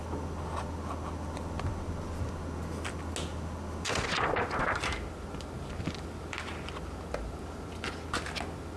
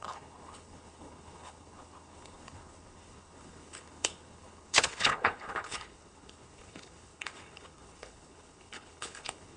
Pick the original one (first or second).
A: first